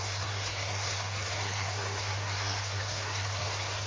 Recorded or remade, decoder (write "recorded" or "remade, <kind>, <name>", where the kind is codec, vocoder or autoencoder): remade, codec, SNAC